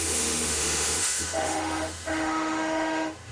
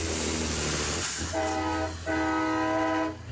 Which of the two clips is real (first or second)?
second